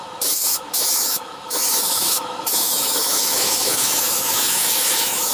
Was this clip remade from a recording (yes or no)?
yes